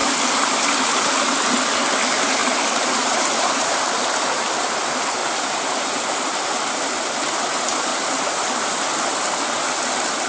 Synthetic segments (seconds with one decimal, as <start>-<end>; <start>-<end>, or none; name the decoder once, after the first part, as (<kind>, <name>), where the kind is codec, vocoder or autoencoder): 0.0-1.1 (vocoder, BigVGAN v2); 2.4-3.7; 5.2-6.9; 7.9-8.8